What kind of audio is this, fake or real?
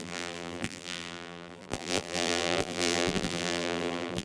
fake